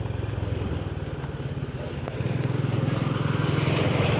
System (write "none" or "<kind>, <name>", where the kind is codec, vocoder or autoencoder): none